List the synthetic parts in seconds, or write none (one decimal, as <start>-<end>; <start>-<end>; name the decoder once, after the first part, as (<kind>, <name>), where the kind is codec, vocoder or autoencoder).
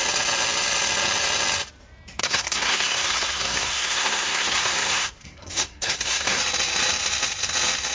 2.2-6.4 (codec, SNAC)